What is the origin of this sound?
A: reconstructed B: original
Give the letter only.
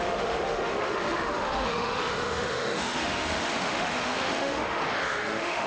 A